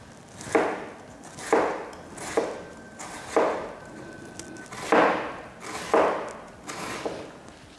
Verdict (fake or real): real